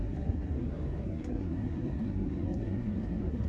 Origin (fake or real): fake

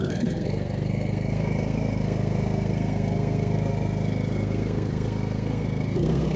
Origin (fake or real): fake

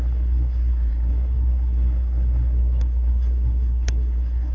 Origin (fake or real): fake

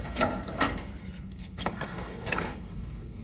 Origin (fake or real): fake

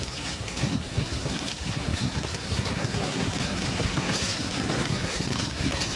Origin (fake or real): fake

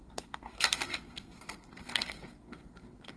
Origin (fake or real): fake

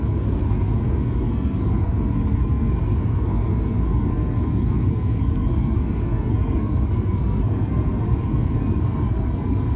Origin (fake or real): fake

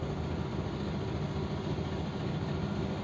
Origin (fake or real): real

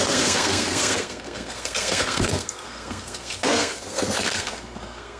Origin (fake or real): fake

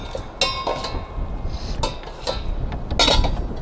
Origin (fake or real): real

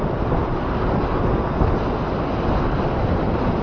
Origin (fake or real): real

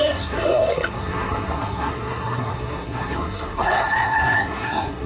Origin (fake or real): fake